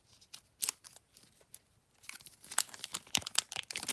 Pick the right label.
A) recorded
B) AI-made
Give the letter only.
B